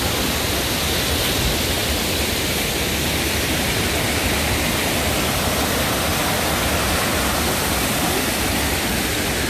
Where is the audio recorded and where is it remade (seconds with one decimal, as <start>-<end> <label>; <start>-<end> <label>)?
0.0-9.5 recorded